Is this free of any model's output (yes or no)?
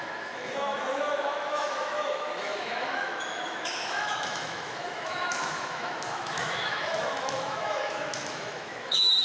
no